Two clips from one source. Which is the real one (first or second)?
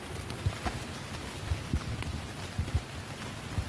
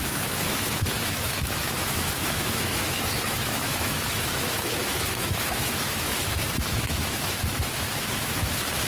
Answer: first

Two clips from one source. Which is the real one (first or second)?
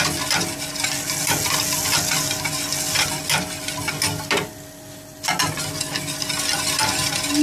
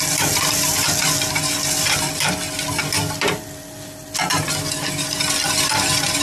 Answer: first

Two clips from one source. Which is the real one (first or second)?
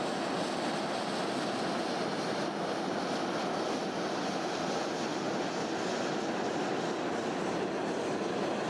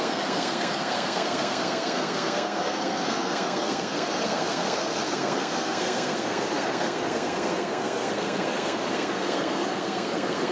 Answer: first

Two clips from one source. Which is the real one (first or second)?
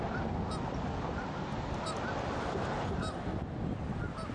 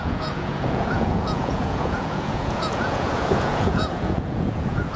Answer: first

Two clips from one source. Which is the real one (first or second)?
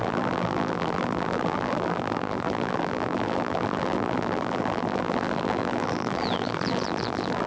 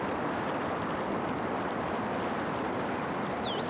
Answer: second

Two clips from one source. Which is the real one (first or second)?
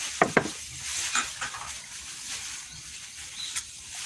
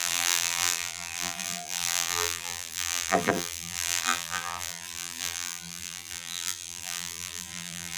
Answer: first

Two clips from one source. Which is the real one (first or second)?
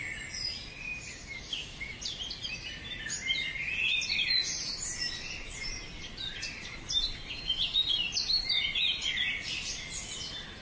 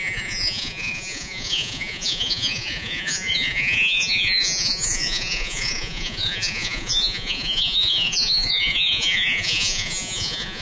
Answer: first